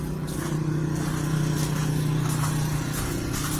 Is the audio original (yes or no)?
yes